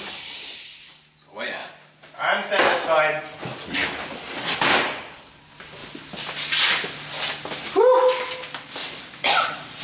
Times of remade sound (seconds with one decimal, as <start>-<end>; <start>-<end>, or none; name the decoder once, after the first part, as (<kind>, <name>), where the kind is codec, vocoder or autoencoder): 8.8-9.8 (vocoder, WaveNeXt)